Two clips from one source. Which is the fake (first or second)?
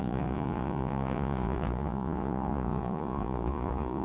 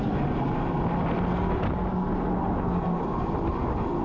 first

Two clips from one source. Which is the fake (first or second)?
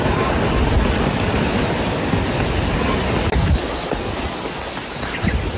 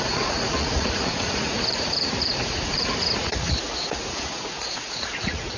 second